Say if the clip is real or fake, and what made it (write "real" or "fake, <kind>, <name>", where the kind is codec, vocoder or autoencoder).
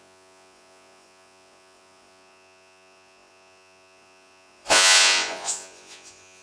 fake, vocoder, Vocos